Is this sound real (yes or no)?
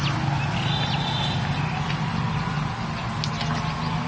yes